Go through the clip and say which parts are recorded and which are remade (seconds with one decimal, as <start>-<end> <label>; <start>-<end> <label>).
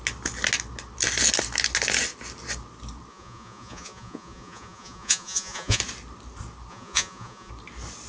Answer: 0.0-3.1 recorded; 3.1-5.8 remade; 5.8-6.7 recorded; 6.7-7.5 remade; 7.5-8.1 recorded